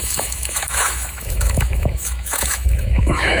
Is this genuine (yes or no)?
no